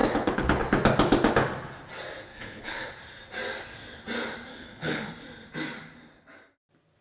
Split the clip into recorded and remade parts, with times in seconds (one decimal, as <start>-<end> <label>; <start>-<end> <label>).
0.0-0.6 remade; 0.6-2.3 recorded; 2.3-2.9 remade; 2.9-4.5 recorded; 4.5-5.1 remade; 5.1-7.0 recorded